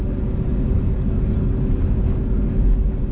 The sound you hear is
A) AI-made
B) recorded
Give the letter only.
B